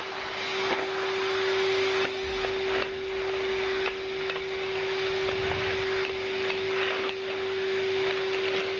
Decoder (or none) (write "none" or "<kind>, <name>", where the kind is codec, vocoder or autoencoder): none